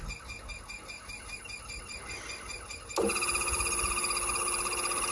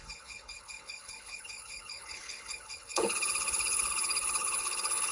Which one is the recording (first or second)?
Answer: first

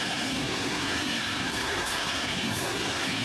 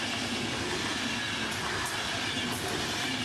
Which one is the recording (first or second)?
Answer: second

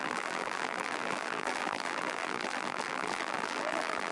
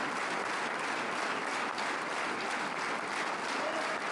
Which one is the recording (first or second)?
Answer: second